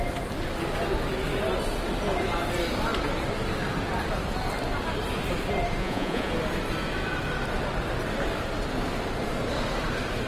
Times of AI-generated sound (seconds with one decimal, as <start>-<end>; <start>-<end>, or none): 5.8-6.3